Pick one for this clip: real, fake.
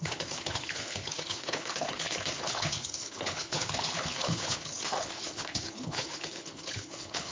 fake